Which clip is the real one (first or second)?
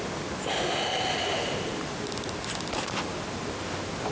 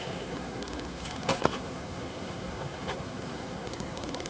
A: first